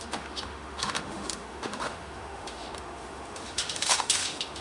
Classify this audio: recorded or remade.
remade